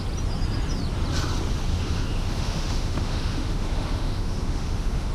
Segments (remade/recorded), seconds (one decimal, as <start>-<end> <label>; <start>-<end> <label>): 0.0-1.7 recorded; 1.7-5.1 remade